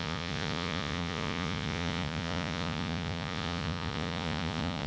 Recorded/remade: remade